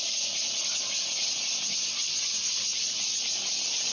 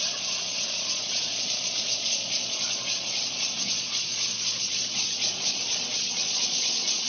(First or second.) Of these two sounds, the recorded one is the first